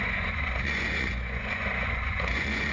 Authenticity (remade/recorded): remade